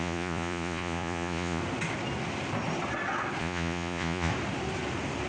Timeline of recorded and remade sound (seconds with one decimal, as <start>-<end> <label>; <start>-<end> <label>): 0.0-1.6 remade; 1.6-3.4 recorded; 3.4-4.3 remade; 4.3-5.3 recorded

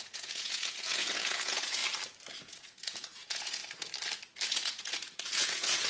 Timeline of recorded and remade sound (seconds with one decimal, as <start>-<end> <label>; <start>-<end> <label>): 0.0-1.8 remade; 1.8-2.4 recorded; 2.4-3.6 remade; 3.6-4.5 recorded; 4.5-5.9 remade